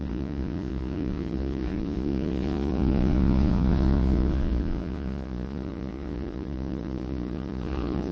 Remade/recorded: remade